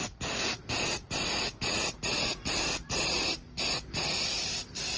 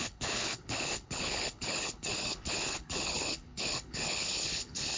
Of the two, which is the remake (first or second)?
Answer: second